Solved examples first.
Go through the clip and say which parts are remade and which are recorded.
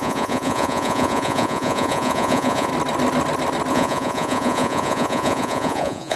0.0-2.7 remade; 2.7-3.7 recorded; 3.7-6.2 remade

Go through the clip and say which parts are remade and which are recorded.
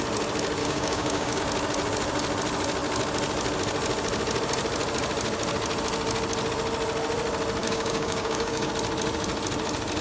0.0-0.6 recorded; 0.6-1.4 remade; 1.4-7.6 recorded; 7.6-8.7 remade; 8.7-10.0 recorded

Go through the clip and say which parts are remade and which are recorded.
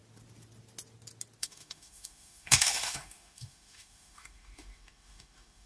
0.0-1.4 recorded; 1.4-5.7 remade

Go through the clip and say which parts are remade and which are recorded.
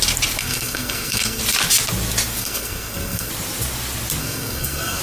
0.0-0.4 recorded; 0.4-1.4 remade; 1.4-2.4 recorded; 2.4-3.3 remade; 3.3-4.2 recorded; 4.2-5.0 remade